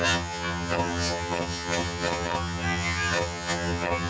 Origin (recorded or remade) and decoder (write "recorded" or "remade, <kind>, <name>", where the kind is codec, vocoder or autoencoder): remade, vocoder, HiFi-GAN